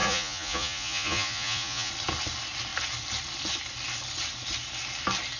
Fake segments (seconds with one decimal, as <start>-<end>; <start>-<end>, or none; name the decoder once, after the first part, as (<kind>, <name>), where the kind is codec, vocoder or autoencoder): 0.0-1.9 (vocoder, Vocos)